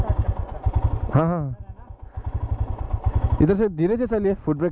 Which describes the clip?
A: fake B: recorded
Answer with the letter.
B